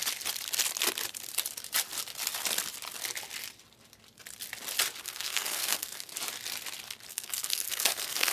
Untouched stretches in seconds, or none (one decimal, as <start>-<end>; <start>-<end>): 0.0-5.0; 6.1-7.1